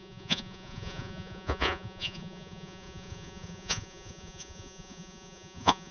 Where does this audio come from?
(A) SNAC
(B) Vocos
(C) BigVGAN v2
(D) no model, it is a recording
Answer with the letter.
B